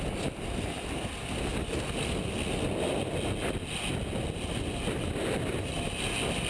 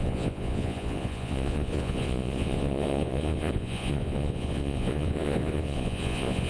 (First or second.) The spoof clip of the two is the second